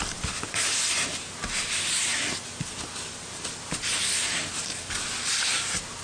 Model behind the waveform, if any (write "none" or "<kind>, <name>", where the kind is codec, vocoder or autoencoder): none